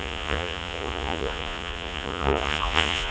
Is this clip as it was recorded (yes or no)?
no